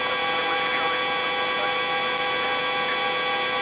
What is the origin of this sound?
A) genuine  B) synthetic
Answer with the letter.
A